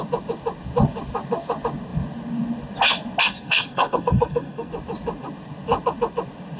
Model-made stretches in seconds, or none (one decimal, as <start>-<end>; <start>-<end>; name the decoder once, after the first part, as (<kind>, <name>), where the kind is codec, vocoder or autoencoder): 3.2-4.7 (codec, SNAC)